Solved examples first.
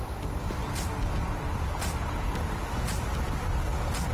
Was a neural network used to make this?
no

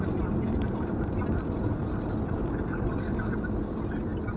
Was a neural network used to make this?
yes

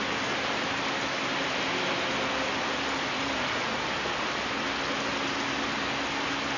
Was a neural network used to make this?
no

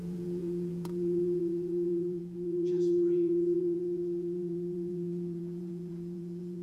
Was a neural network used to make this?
yes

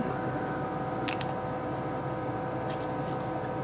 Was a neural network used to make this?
no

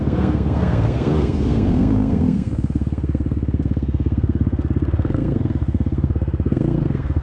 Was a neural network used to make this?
yes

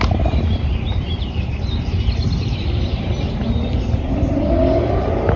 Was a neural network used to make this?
yes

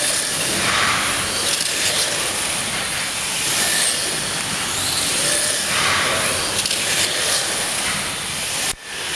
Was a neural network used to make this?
no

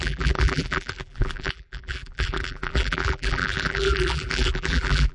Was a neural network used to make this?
yes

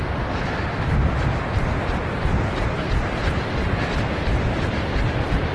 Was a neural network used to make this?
no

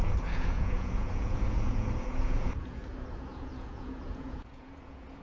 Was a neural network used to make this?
yes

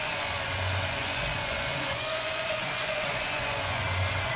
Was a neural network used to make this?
yes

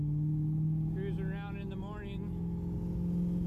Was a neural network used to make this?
no